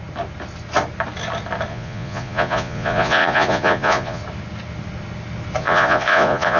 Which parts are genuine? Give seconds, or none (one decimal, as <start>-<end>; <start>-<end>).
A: 0.0-1.7; 4.2-5.6